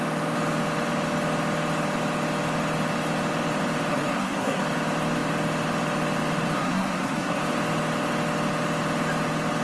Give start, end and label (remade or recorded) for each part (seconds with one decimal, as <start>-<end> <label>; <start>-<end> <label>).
0.0-3.9 recorded; 3.9-4.6 remade; 4.6-6.5 recorded; 6.5-7.4 remade; 7.4-9.6 recorded